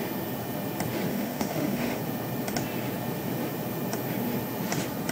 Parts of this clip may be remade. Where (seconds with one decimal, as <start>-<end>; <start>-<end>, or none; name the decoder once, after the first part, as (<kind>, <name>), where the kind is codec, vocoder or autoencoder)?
1.1-2.0 (autoencoder, DAC-VAE)